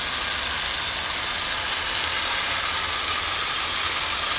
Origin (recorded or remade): recorded